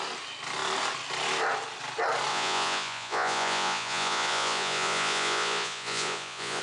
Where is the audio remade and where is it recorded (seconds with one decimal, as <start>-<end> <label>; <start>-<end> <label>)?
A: 0.0-2.3 recorded; 2.3-6.6 remade